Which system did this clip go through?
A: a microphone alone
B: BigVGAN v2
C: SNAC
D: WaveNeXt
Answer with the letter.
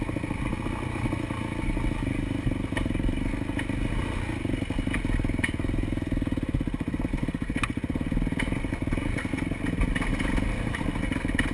A